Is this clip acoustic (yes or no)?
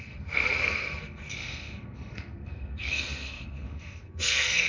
no